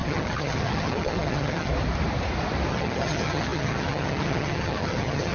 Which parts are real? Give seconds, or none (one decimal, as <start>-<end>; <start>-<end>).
1.7-2.7